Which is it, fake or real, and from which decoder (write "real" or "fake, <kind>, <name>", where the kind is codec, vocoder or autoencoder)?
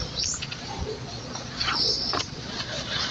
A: fake, vocoder, Vocos